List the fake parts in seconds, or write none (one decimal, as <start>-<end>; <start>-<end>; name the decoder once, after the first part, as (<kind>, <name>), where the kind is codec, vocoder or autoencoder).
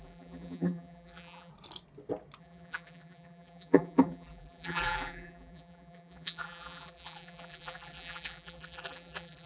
0.0-1.5 (vocoder, BigVGAN v2); 2.4-9.5